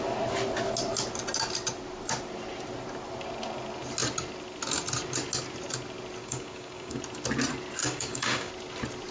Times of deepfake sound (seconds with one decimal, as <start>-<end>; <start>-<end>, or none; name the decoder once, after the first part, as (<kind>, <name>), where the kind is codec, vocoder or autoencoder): 6.2-7.0 (codec, DAC); 7.8-8.5